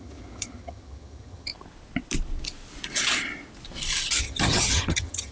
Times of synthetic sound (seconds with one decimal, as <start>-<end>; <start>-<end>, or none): 0.0-1.5; 4.2-5.3